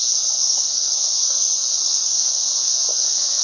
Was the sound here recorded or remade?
remade